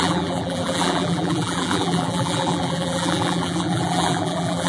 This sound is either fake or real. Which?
fake